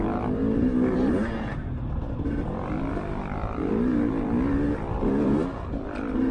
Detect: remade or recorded recorded